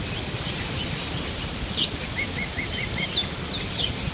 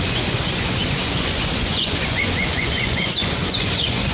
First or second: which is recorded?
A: first